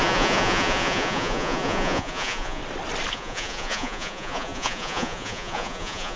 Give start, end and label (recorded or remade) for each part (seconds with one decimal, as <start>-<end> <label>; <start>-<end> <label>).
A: 0.0-2.6 remade; 2.6-3.1 recorded; 3.1-6.2 remade